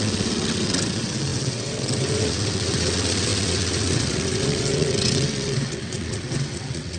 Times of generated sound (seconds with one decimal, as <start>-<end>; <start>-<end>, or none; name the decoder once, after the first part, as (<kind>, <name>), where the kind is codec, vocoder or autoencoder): 0.0-7.0 (vocoder, WaveNeXt)